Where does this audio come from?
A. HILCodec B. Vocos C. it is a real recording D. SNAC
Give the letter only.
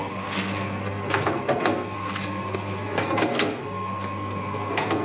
D